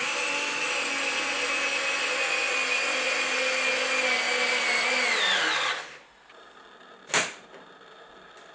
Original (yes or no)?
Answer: yes